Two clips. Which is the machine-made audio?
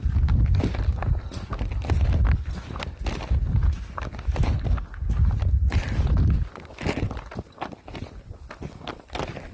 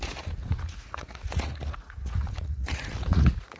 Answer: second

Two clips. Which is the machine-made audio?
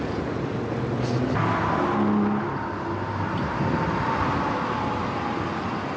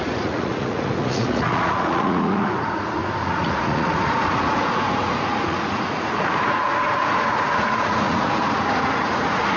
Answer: second